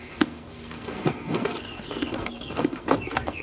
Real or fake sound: fake